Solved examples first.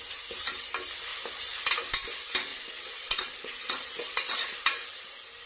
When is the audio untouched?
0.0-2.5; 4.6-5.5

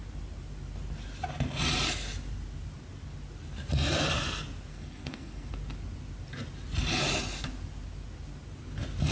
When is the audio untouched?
0.0-4.7; 5.5-9.1

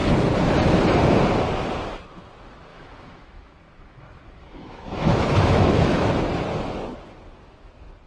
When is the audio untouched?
0.0-2.7; 6.1-8.1

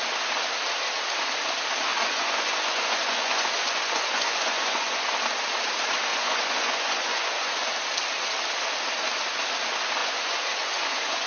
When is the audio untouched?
0.0-1.9; 5.1-6.1; 7.5-10.0

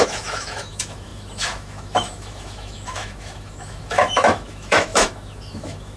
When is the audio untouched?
none